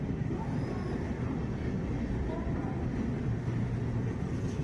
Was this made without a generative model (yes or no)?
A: yes